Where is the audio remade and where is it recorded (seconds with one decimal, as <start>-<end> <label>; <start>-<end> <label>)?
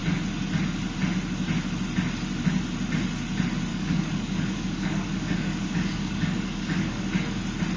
0.0-3.7 recorded; 3.7-7.0 remade; 7.0-7.8 recorded